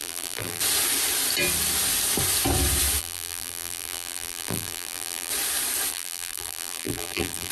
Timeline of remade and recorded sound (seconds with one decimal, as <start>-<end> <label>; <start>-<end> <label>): 0.0-0.6 remade; 0.6-3.0 recorded; 3.0-5.3 remade; 5.3-5.9 recorded; 5.9-7.5 remade